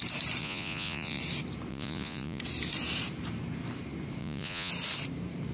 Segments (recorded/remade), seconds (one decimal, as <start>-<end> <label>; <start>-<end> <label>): 0.0-0.4 recorded; 0.4-1.2 remade; 1.2-1.7 recorded; 1.7-2.4 remade; 2.4-4.2 recorded; 4.2-4.7 remade; 4.7-5.5 recorded